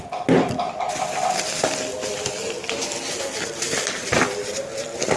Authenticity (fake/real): real